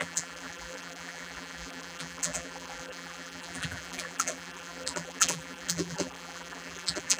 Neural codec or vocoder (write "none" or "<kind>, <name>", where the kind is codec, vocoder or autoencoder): vocoder, BigVGAN v2